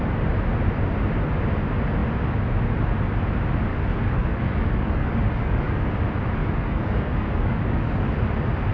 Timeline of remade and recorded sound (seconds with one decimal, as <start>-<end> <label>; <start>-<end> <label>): 0.0-3.7 recorded; 3.7-5.9 remade; 5.9-6.4 recorded; 6.4-8.1 remade; 8.1-8.7 recorded